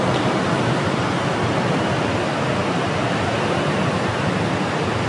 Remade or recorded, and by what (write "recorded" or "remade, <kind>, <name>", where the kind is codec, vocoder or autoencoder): recorded